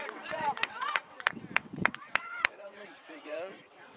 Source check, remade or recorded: remade